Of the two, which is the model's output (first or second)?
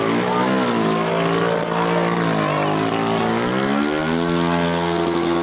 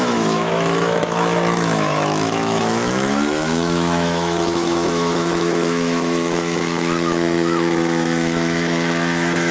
second